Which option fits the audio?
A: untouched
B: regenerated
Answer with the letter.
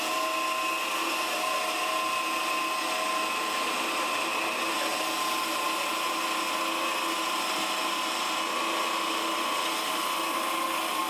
A